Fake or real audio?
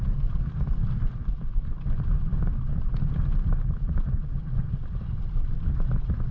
real